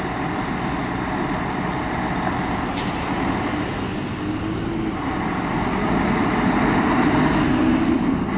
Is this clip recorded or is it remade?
recorded